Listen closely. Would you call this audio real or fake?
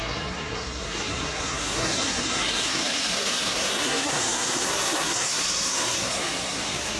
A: fake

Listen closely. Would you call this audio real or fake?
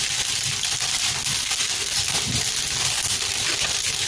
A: real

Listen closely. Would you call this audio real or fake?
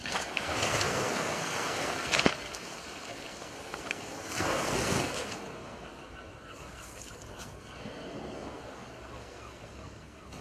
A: fake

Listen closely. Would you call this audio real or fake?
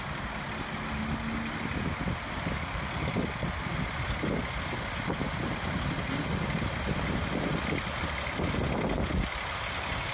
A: real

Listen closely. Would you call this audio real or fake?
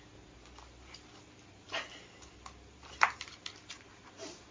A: real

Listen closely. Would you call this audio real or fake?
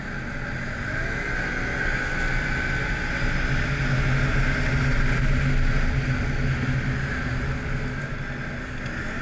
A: real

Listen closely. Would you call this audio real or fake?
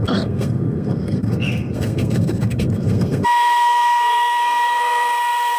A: fake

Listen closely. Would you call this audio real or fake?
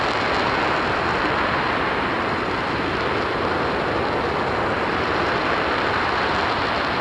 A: real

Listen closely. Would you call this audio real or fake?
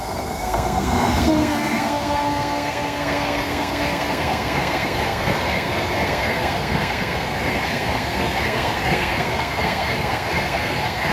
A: fake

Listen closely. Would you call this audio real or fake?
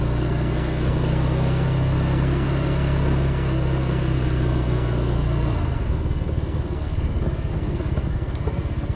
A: fake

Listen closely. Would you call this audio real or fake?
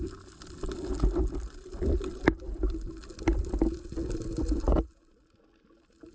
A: real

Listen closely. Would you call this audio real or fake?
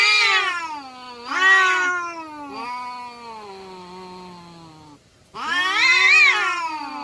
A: real